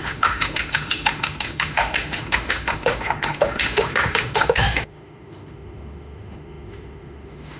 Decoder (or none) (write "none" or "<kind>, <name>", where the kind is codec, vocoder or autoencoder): autoencoder, DAC-VAE